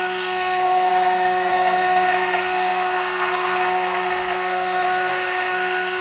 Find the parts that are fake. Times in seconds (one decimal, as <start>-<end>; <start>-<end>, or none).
0.0-0.9; 1.5-6.0